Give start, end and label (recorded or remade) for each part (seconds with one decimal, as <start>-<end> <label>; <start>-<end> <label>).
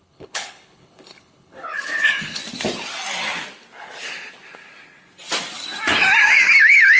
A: 0.0-2.4 remade; 2.4-6.6 recorded; 6.6-7.0 remade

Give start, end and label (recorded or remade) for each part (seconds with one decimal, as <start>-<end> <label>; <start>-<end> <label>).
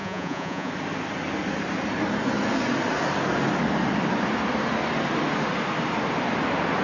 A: 0.0-0.7 remade; 0.7-6.8 recorded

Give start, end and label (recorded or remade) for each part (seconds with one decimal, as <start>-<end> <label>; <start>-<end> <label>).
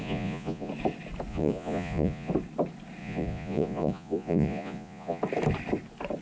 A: 0.0-0.7 remade; 0.7-1.3 recorded; 1.3-2.3 remade; 2.3-3.0 recorded; 3.0-5.2 remade; 5.2-6.2 recorded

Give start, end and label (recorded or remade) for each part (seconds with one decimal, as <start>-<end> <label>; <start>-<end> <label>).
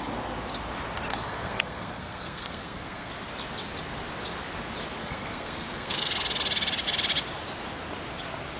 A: 0.0-1.1 recorded; 1.1-3.1 remade; 3.1-5.0 recorded; 5.0-6.1 remade; 6.1-8.6 recorded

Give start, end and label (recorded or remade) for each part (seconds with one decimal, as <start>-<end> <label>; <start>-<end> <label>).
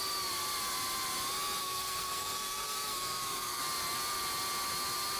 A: 0.0-1.6 recorded; 1.6-3.6 remade; 3.6-5.2 recorded